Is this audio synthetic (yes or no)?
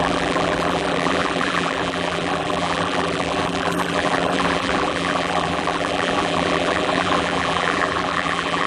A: yes